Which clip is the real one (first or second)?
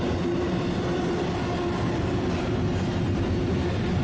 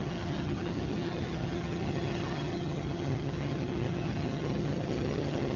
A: first